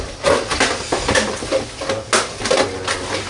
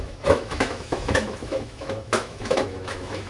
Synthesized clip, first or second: second